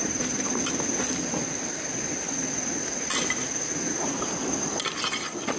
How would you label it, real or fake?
real